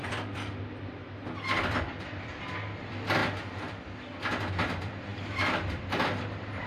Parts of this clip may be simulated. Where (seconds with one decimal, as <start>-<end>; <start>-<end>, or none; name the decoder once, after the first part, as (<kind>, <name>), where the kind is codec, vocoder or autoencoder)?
0.0-1.0 (vocoder, BigVGAN v2); 1.6-3.2; 4.5-6.7